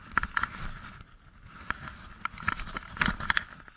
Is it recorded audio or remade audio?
recorded